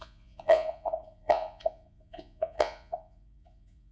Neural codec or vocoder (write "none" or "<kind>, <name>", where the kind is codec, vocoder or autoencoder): vocoder, Vocos